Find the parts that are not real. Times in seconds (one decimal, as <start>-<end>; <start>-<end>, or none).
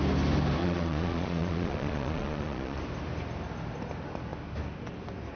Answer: 0.6-2.8